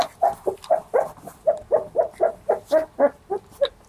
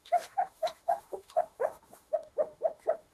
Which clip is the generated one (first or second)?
second